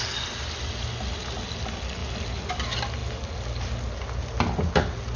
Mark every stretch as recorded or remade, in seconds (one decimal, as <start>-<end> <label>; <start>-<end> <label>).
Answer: 0.0-5.2 recorded